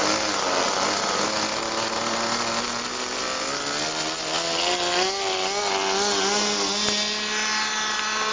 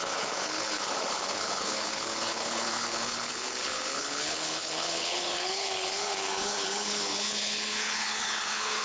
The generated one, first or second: second